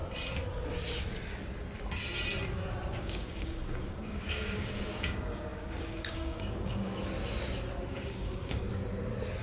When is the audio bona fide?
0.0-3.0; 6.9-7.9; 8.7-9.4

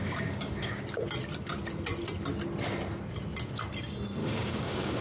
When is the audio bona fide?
0.8-4.2